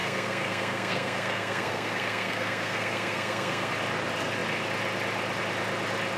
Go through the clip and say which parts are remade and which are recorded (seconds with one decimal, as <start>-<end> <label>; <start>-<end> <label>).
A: 0.0-3.7 remade; 3.7-6.2 recorded